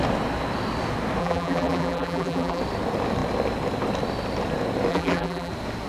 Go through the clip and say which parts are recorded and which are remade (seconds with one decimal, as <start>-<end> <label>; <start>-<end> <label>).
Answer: 0.0-1.2 recorded; 1.2-2.6 remade; 2.6-4.9 recorded; 4.9-5.5 remade; 5.5-5.9 recorded